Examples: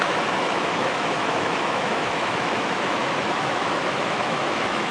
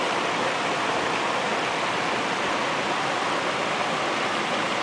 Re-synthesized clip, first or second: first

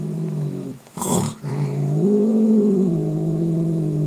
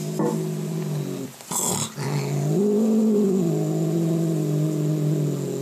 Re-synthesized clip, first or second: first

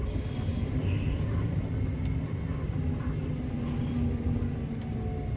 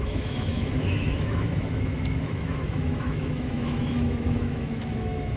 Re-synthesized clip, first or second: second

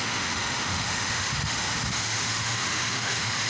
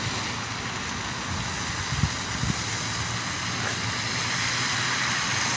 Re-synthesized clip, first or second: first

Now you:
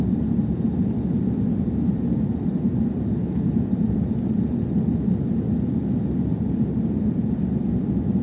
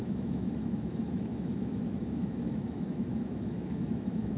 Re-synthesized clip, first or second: second